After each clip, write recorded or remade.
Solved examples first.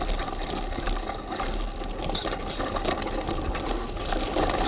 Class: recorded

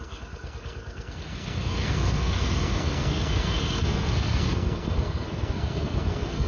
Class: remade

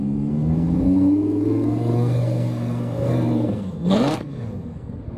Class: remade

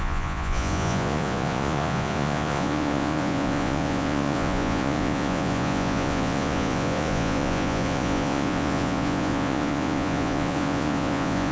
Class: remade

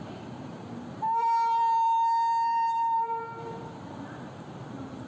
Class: remade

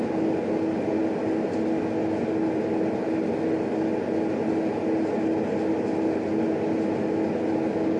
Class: recorded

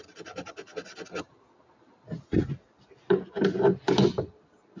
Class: recorded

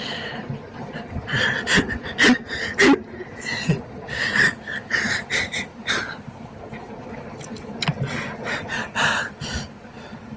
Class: recorded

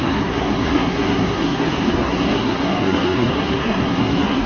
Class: remade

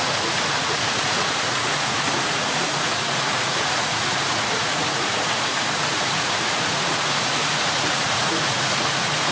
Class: remade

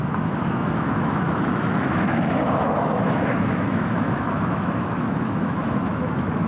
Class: remade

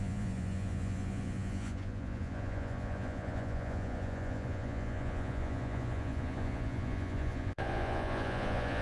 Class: remade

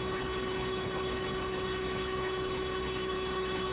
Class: remade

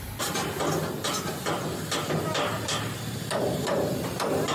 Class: recorded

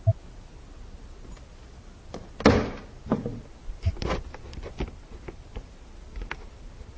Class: recorded